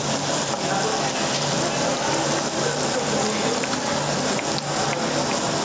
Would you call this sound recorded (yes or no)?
yes